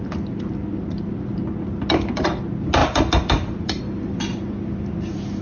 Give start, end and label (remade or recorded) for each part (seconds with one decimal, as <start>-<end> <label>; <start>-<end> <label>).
0.0-2.8 recorded; 2.8-3.8 remade; 3.8-5.4 recorded

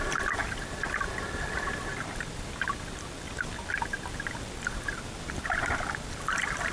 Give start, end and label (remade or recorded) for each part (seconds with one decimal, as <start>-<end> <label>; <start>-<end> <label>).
0.0-6.7 remade

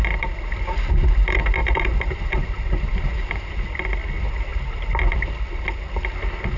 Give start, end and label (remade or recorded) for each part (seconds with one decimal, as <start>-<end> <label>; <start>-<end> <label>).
0.0-1.6 recorded; 1.6-3.5 remade; 3.5-6.6 recorded

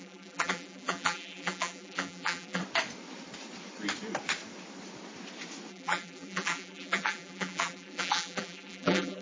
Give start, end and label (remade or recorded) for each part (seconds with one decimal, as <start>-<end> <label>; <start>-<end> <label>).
0.0-2.6 remade; 2.6-5.7 recorded; 5.7-9.2 remade

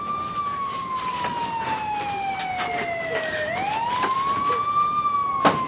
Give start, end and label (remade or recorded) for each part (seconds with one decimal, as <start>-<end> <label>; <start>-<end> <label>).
0.0-0.8 recorded; 0.8-4.2 remade; 4.2-5.7 recorded

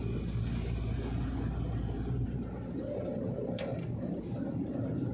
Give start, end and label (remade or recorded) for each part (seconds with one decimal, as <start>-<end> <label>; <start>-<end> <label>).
0.0-1.7 recorded; 1.7-5.1 remade

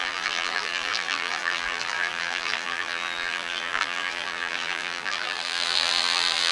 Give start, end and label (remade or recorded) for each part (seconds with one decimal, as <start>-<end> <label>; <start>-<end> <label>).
0.0-6.5 remade